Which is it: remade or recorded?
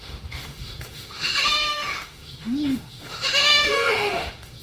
remade